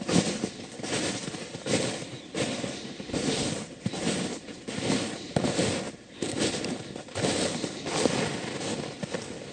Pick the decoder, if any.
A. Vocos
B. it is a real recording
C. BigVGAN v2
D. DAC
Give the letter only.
B